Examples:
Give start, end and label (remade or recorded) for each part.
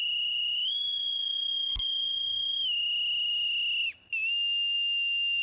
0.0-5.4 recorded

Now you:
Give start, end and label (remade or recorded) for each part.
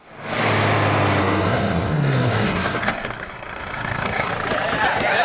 0.0-1.2 recorded; 1.2-4.3 remade; 4.3-5.2 recorded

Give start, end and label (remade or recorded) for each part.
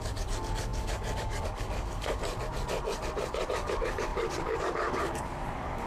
0.0-2.2 remade; 2.2-3.5 recorded; 3.5-5.9 remade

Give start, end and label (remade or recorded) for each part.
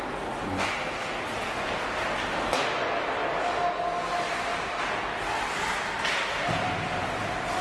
0.0-4.5 recorded; 4.5-6.0 remade; 6.0-7.6 recorded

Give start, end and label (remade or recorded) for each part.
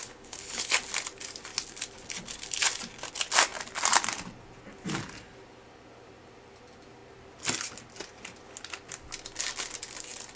0.0-0.6 remade; 0.6-10.4 recorded